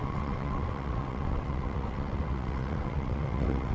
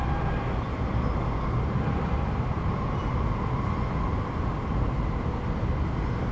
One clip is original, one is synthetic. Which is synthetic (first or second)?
first